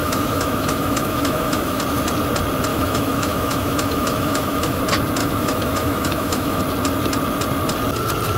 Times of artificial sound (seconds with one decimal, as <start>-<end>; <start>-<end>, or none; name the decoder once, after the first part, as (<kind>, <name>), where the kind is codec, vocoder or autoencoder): 0.0-1.8 (autoencoder, DAC-VAE); 2.7-4.8; 5.2-6.6